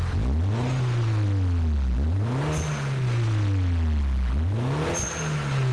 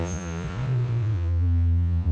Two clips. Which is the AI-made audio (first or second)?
second